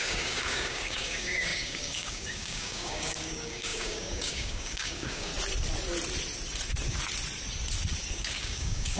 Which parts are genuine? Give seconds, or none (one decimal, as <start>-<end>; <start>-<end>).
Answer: 5.3-8.1